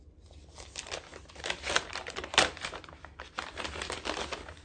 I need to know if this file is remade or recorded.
recorded